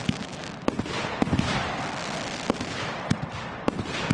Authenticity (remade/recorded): recorded